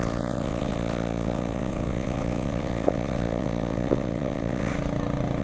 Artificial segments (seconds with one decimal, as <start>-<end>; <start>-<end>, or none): 0.0-4.7

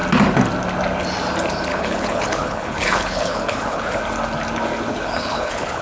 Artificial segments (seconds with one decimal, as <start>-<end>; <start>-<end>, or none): 1.7-4.0; 4.9-5.8

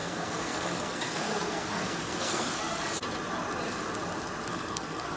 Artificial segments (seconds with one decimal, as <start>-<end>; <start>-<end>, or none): 0.0-2.6; 4.5-5.2

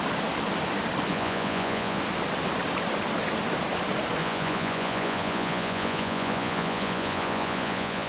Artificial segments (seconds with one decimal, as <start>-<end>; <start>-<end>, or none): 1.1-2.0; 4.2-8.1

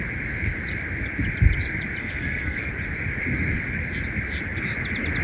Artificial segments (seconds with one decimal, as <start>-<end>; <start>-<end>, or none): 2.0-2.7

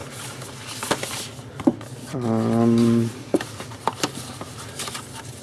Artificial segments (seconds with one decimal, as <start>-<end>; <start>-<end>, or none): none